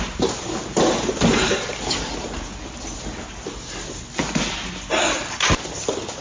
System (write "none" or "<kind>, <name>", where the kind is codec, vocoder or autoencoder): none